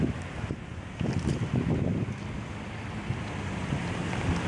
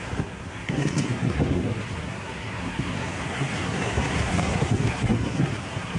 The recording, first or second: first